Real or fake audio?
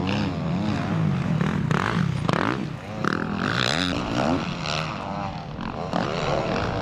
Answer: real